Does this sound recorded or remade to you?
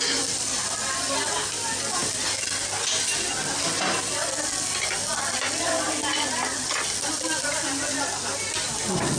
recorded